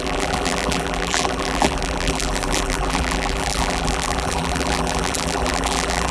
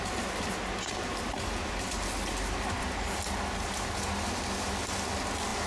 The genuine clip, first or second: second